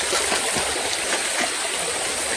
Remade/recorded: recorded